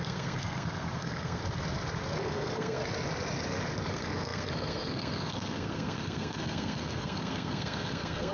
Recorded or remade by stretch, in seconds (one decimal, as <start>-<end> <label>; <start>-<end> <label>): 0.0-1.4 remade; 1.4-2.2 recorded; 2.2-2.8 remade; 2.8-3.9 recorded; 3.9-8.3 remade